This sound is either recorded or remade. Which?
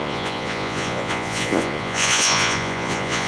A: remade